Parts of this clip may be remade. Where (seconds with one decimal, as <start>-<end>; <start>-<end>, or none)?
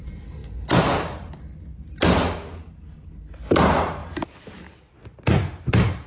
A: none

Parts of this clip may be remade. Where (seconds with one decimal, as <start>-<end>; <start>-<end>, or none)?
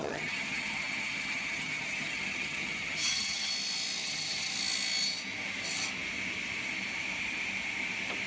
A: 0.0-3.5; 4.0-4.5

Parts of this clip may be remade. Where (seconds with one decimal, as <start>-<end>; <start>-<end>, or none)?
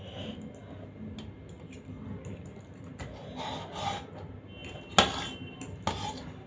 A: none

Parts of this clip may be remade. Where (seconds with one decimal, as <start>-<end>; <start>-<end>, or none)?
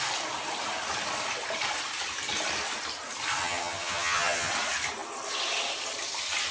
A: 3.4-4.5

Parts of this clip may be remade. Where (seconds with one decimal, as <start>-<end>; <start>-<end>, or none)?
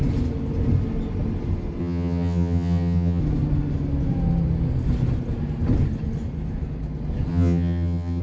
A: 1.8-3.2; 7.3-8.2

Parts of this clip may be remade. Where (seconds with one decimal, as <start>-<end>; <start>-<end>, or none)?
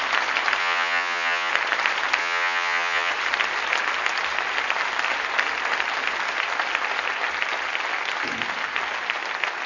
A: 0.6-1.5; 2.2-3.1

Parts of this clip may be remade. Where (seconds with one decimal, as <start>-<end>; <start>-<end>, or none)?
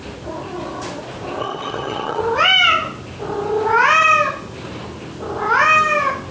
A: 1.4-2.2